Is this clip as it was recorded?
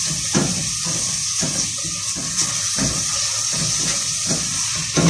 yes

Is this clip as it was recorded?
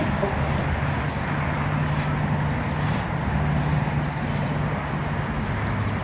yes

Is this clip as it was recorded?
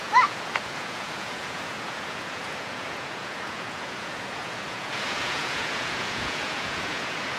no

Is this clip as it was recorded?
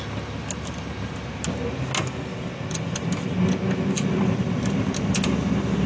yes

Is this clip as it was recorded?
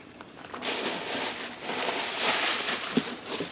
yes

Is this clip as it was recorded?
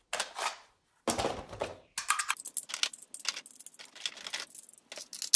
yes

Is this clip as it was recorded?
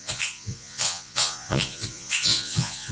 no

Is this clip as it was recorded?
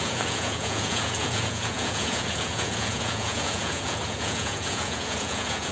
no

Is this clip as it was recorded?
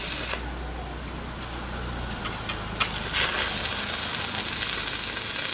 yes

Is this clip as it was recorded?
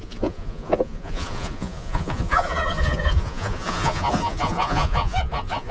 no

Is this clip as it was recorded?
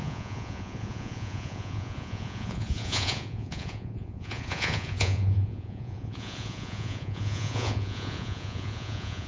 no